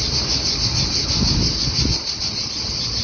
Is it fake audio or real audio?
real